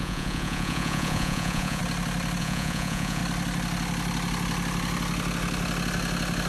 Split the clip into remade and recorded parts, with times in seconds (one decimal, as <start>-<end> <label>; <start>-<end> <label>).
0.0-1.8 remade; 1.8-2.4 recorded; 2.4-3.2 remade; 3.2-6.5 recorded